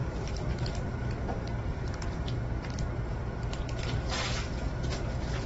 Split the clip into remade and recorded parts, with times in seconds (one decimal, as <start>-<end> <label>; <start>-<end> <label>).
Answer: 0.0-2.4 remade; 2.4-4.6 recorded; 4.6-5.5 remade